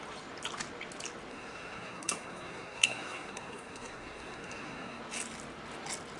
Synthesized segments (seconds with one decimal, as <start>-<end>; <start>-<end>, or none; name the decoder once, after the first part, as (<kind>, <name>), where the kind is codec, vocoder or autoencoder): 1.3-5.0 (codec, SNAC)